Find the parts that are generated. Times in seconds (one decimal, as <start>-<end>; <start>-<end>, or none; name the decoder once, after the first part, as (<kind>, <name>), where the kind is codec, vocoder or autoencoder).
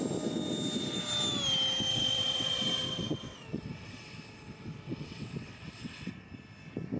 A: 1.9-6.1 (vocoder, WaveNeXt)